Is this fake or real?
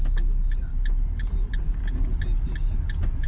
real